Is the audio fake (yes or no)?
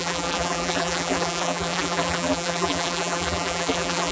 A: yes